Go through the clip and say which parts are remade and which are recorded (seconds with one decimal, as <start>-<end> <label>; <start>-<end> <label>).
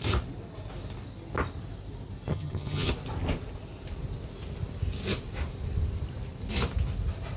0.0-2.3 recorded; 2.3-2.9 remade; 2.9-7.4 recorded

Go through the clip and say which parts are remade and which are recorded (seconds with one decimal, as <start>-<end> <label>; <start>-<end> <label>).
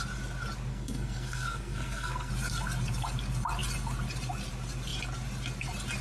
0.0-0.7 recorded; 0.7-2.3 remade; 2.3-6.0 recorded